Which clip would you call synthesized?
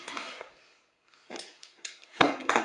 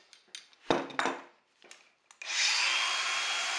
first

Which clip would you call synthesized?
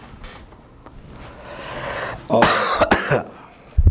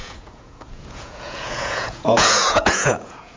second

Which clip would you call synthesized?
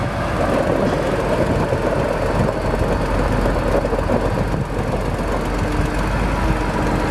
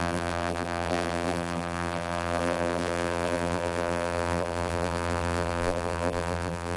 second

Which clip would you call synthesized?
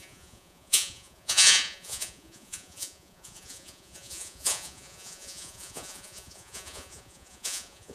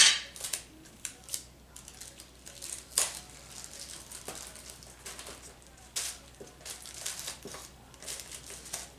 first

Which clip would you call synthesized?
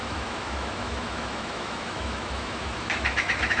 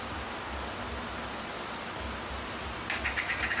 first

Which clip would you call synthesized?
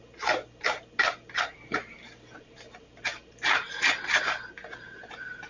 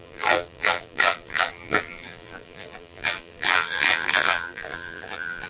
second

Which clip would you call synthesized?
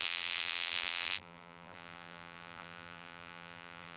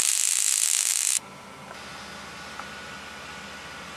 first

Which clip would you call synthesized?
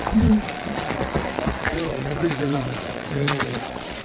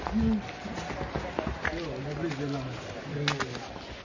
first